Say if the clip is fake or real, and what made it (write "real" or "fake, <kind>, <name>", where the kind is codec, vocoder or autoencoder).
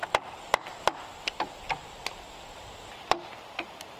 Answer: real